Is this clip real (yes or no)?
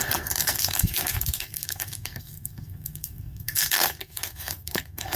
no